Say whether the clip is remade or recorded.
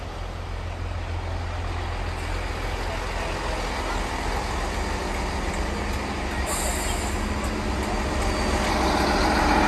recorded